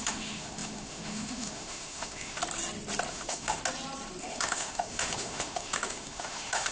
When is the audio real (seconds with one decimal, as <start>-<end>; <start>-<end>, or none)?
2.4-3.1; 3.6-4.2